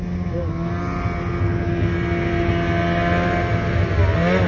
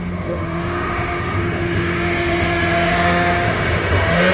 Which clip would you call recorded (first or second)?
first